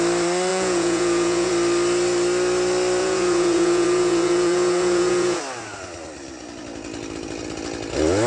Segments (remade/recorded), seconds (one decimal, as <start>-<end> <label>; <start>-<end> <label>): 0.0-0.5 recorded; 0.5-1.5 remade; 1.5-3.0 recorded; 3.0-5.4 remade; 5.4-8.3 recorded